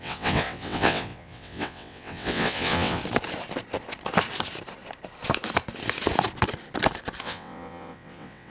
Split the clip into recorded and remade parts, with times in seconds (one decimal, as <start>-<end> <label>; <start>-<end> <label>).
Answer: 0.0-3.0 remade; 3.0-7.2 recorded; 7.2-8.5 remade

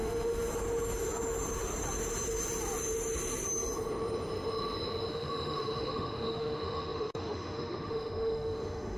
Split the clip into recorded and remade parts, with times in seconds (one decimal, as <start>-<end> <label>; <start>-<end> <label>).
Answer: 0.0-0.5 remade; 0.5-5.1 recorded; 5.1-9.0 remade

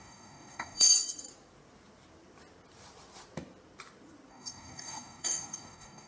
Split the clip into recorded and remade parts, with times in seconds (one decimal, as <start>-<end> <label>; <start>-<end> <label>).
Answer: 0.0-0.9 remade; 0.9-4.3 recorded; 4.3-6.1 remade

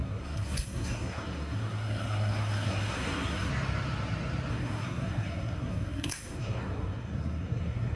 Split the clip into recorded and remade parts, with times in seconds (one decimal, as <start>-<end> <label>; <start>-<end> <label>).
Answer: 0.0-3.5 remade; 3.5-4.5 recorded; 4.5-8.0 remade